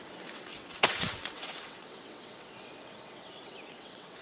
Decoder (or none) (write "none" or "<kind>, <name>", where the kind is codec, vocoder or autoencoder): vocoder, WaveNeXt